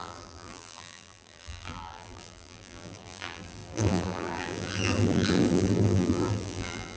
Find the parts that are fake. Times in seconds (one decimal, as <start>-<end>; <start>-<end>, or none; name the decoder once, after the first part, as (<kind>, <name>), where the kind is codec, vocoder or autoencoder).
0.0-7.0 (vocoder, BigVGAN v2)